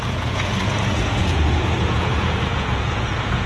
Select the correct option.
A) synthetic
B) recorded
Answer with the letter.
A